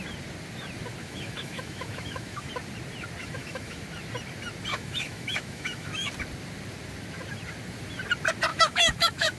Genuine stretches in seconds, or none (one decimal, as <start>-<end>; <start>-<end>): 0.0-1.0; 2.5-3.2; 3.8-4.7; 6.1-8.5